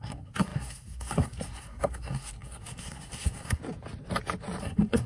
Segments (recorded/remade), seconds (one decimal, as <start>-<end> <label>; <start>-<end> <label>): 0.0-3.6 remade; 3.6-4.6 recorded; 4.6-5.1 remade

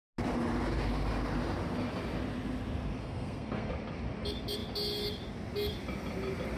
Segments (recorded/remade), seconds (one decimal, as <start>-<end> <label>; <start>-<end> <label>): 0.0-3.0 recorded; 3.0-3.7 remade; 3.7-6.6 recorded

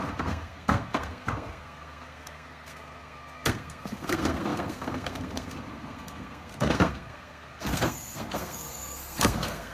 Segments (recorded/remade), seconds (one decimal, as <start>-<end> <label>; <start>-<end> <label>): 0.0-9.7 remade

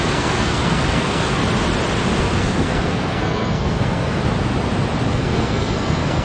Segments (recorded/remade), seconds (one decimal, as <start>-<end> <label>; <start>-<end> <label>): 0.0-1.4 remade; 1.4-2.2 recorded; 2.2-4.2 remade; 4.2-5.1 recorded; 5.1-6.2 remade

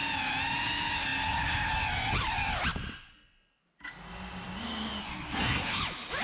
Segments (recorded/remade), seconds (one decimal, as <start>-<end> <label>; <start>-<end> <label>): 0.0-5.0 recorded; 5.0-5.8 remade; 5.8-6.2 recorded